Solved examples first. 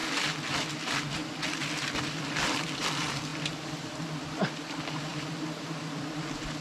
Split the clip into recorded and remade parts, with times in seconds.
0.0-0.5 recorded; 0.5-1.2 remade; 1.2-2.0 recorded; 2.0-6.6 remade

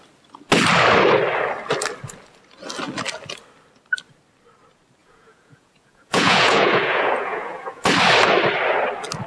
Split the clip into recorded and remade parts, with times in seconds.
0.0-5.0 recorded; 5.0-7.9 remade; 7.9-9.3 recorded

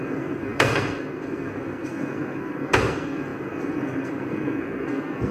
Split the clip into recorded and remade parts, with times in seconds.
0.0-5.3 remade